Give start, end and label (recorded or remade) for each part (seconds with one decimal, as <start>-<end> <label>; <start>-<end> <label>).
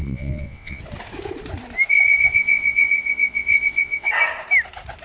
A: 0.0-0.8 remade; 0.8-1.9 recorded; 1.9-4.1 remade; 4.1-5.0 recorded